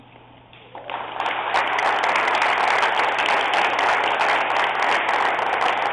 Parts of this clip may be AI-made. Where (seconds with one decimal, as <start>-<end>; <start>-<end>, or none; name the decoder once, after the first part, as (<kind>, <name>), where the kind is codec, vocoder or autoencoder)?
none